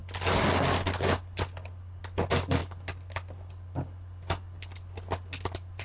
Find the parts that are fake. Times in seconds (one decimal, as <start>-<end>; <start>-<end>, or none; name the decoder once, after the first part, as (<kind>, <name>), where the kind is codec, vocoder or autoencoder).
none